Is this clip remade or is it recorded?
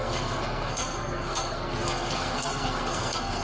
remade